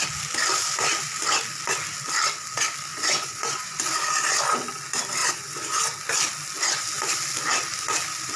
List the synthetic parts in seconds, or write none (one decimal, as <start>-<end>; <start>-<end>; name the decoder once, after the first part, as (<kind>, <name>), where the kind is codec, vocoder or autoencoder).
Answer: 2.9-3.8 (vocoder, Vocos); 5.2-5.8